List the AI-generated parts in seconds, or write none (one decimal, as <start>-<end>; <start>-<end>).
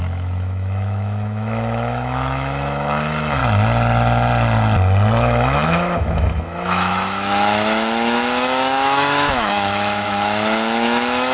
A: 0.0-3.4; 5.2-11.3